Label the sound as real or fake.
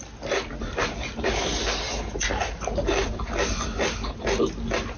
real